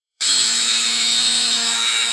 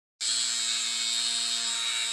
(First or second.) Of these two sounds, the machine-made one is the first